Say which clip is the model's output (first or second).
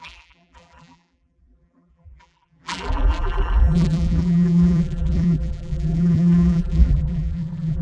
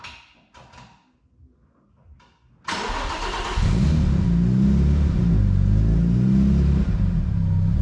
first